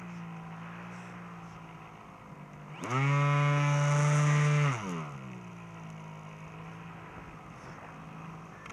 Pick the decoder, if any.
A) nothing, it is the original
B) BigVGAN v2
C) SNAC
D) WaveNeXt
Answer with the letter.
A